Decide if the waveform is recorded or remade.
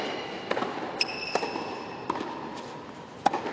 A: recorded